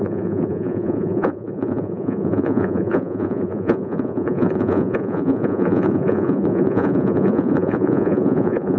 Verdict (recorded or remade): remade